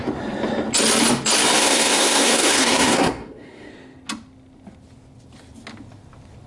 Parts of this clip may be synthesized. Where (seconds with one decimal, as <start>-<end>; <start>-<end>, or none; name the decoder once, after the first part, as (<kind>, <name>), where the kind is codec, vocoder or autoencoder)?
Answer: 1.6-3.7 (codec, SNAC)